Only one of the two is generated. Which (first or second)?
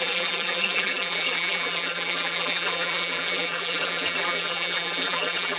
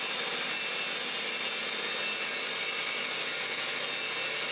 first